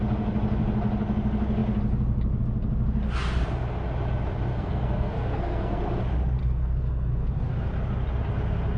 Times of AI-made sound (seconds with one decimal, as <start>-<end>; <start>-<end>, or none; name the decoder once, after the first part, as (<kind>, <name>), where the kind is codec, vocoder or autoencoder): 4.5-5.8 (codec, SNAC); 6.4-7.3

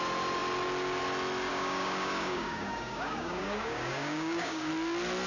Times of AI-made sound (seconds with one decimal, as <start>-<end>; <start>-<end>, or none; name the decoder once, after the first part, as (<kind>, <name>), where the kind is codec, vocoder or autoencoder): 1.5-4.7 (codec, DAC)

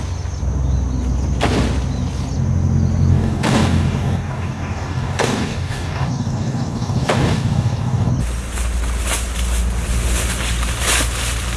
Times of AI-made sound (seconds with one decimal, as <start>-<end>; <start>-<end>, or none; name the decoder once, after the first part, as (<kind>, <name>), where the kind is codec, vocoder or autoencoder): 3.1-8.1 (codec, DAC)

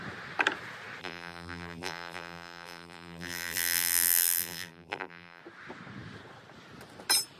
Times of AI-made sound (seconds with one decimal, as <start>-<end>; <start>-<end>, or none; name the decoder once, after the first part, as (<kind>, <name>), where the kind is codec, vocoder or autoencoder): 1.0-5.4 (vocoder, BigVGAN v2)

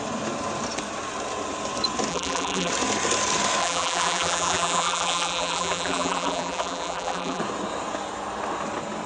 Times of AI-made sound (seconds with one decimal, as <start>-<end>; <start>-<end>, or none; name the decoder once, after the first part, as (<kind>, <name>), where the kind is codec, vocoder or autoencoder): 2.1-2.7 (vocoder, BigVGAN v2); 3.6-7.4

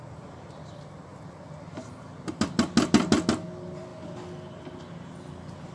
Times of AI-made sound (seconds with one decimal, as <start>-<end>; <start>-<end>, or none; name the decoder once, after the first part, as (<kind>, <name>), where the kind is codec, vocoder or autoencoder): none